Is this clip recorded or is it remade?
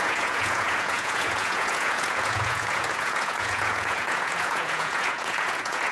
remade